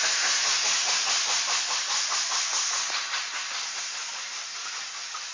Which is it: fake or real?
real